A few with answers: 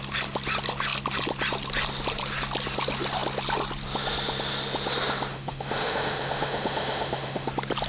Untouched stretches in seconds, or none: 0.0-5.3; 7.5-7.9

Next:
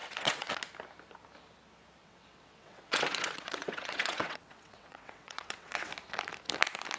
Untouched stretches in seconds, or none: 0.5-2.0; 5.9-7.0

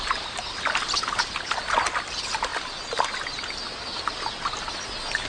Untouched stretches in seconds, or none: 0.0-5.3

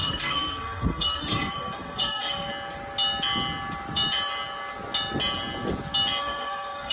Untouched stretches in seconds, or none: 2.5-6.2